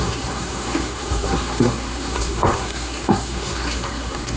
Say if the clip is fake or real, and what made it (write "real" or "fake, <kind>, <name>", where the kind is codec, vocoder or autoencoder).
fake, codec, SNAC